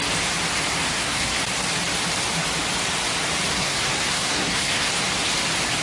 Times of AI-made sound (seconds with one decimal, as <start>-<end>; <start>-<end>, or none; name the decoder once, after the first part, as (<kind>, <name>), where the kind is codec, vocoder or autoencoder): 0.9-1.4 (codec, SNAC); 3.5-4.9